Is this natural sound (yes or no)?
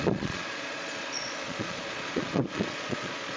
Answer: no